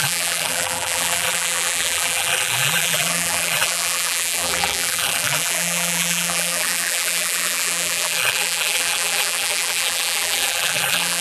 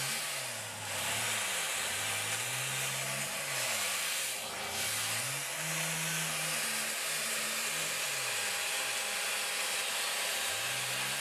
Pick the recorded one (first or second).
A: second